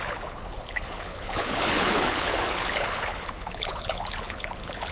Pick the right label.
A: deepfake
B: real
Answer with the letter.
A